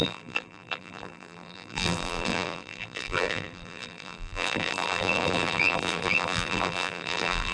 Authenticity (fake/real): fake